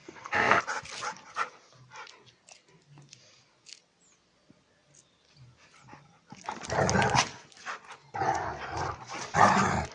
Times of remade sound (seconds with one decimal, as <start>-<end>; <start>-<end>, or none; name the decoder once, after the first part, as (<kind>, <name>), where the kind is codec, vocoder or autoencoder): 0.0-0.6 (codec, SNAC)